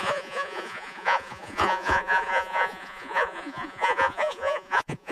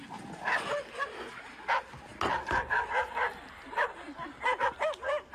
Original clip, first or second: second